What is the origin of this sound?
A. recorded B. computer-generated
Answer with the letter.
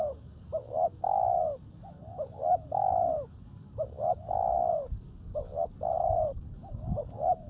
B